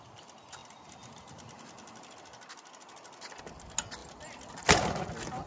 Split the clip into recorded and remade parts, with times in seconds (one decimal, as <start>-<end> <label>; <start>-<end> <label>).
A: 0.0-4.0 recorded; 4.0-4.5 remade; 4.5-5.5 recorded